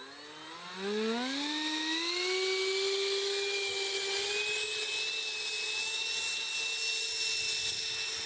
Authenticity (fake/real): real